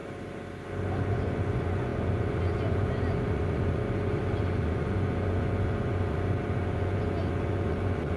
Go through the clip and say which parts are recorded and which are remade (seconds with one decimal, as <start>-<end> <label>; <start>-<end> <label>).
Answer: 0.0-1.0 recorded; 1.0-8.2 remade